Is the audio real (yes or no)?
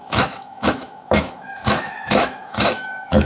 no